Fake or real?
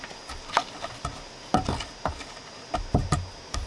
real